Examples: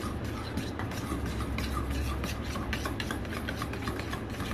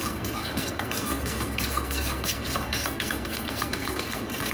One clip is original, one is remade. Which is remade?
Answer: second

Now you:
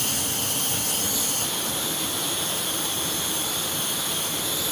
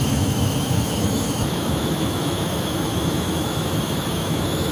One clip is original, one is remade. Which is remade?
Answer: second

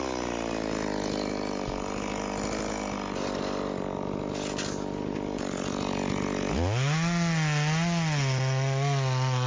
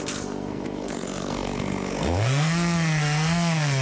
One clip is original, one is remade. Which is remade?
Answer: second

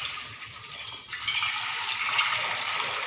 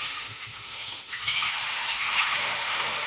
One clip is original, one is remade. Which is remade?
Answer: second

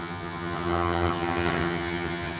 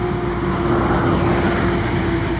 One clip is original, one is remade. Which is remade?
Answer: first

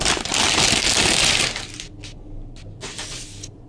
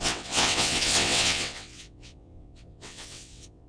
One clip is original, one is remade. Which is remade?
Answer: second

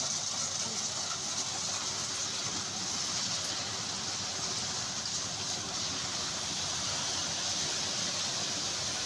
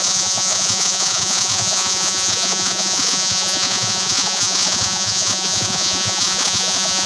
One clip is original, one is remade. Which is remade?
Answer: second